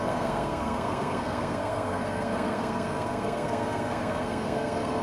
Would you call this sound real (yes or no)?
no